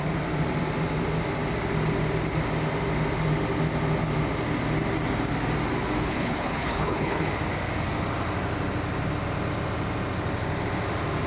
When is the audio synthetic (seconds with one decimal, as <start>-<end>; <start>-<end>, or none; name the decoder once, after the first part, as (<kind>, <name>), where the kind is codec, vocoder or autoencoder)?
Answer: 6.0-7.3 (codec, HILCodec)